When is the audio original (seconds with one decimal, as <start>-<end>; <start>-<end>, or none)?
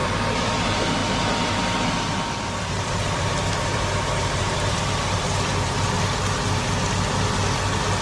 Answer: 0.5-1.0; 5.8-8.0